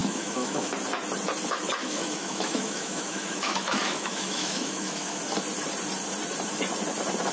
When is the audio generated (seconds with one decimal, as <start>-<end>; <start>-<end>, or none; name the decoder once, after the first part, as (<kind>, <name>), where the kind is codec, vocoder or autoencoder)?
0.0-0.7 (autoencoder, DAC-VAE); 1.8-5.2